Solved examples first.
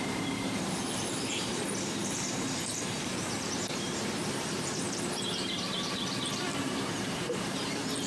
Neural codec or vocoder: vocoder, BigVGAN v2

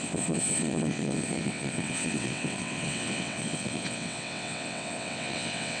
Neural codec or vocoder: vocoder, WaveNeXt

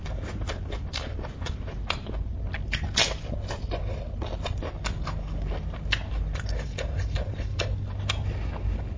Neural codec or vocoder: none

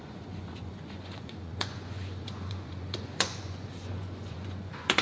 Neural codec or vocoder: vocoder, Vocos